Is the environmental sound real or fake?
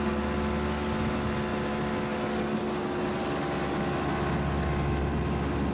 real